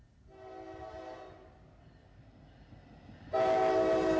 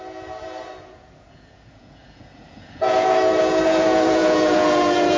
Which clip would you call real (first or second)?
first